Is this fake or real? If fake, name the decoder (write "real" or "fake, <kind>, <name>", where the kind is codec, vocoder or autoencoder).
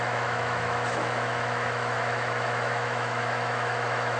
fake, autoencoder, DAC-VAE